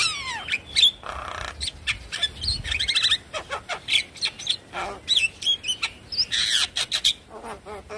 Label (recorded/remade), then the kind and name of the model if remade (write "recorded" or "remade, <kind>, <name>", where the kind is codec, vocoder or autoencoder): recorded